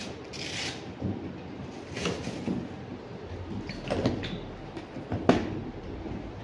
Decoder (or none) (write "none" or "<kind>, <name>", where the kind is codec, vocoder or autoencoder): none